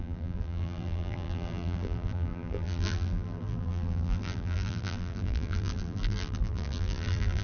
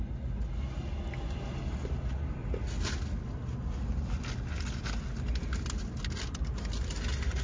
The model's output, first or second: first